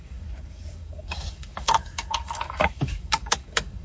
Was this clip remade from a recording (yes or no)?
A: yes